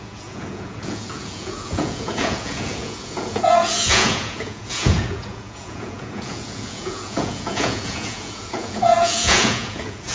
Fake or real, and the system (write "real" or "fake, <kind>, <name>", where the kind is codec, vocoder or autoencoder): fake, vocoder, Vocos